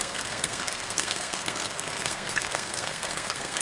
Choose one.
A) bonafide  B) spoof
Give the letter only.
B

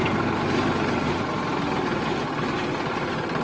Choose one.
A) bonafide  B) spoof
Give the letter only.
A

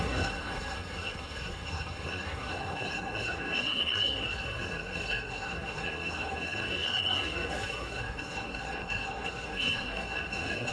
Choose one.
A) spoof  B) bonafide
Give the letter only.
A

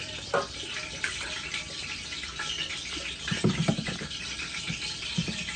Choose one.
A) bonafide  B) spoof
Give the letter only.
B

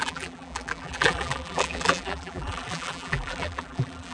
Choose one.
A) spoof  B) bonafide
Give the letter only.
A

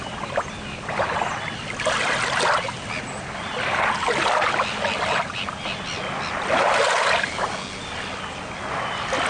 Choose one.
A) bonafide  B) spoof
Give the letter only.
A